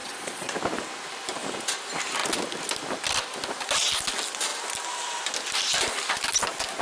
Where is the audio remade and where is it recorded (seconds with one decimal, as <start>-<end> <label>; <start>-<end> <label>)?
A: 0.0-0.5 remade; 0.5-6.8 recorded